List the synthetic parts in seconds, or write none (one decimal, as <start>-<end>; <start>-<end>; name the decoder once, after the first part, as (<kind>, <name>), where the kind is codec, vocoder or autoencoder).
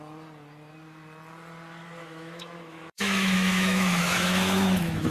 2.0-5.1 (autoencoder, DAC-VAE)